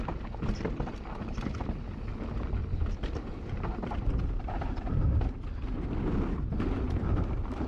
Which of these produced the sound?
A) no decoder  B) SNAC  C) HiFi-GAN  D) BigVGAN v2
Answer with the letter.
D